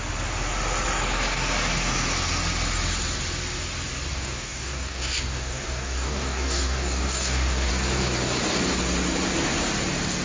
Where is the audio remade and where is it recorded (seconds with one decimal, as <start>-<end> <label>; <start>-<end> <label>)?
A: 0.0-4.1 recorded; 4.1-7.7 remade; 7.7-10.2 recorded